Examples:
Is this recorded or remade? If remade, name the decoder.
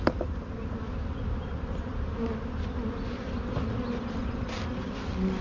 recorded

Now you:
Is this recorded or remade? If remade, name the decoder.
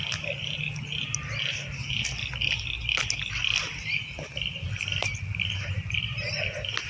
recorded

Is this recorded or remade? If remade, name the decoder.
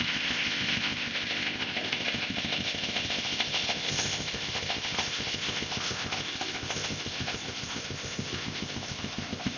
remade, codec, ZipCodec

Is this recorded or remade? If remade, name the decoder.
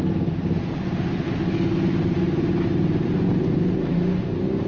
recorded